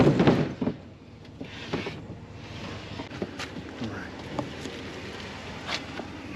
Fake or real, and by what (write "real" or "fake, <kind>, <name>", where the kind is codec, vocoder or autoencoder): real